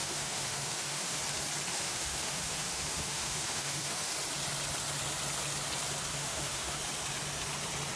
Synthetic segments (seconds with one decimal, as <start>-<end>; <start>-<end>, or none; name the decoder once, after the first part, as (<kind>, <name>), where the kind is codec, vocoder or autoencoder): 0.0-1.2 (autoencoder, DAC-VAE); 1.7-4.1; 6.1-6.8